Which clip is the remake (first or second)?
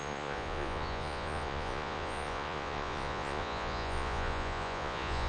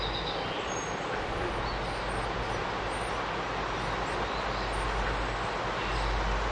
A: first